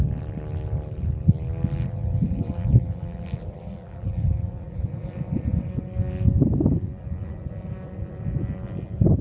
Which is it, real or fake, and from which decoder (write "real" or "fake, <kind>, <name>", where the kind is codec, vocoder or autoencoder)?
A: real